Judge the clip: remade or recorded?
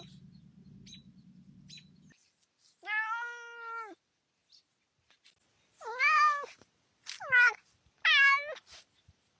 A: recorded